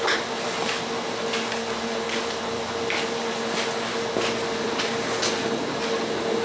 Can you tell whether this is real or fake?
real